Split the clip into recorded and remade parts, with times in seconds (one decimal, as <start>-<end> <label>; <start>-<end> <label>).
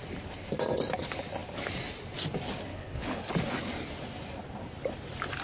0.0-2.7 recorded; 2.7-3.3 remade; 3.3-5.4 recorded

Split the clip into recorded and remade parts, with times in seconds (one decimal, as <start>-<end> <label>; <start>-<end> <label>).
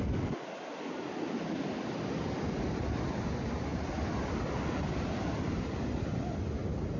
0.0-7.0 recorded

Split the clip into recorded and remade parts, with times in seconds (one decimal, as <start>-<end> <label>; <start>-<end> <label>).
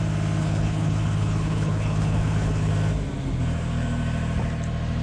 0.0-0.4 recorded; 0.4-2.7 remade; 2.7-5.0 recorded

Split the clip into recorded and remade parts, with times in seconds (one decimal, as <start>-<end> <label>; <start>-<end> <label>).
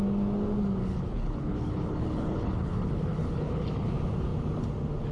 0.0-0.8 recorded; 0.8-3.9 remade; 3.9-5.1 recorded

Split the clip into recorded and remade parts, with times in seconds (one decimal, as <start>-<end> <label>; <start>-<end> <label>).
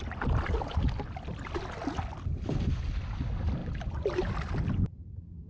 0.0-5.5 recorded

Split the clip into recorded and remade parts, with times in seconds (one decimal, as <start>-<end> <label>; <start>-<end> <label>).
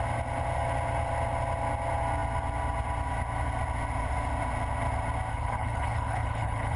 0.0-5.3 recorded; 5.3-6.8 remade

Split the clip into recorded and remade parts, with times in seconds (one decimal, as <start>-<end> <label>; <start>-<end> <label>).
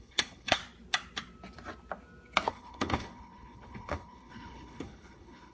0.0-0.6 remade; 0.6-2.5 recorded; 2.5-5.5 remade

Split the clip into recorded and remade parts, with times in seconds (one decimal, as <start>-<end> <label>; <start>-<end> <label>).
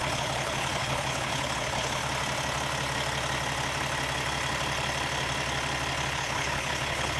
0.0-2.0 remade; 2.0-6.1 recorded; 6.1-7.2 remade